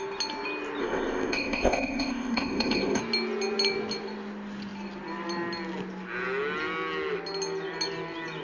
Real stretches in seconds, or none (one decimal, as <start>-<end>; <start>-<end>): 0.0-0.8; 3.0-8.4